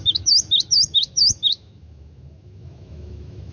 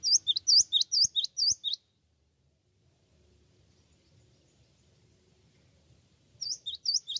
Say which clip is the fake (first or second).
first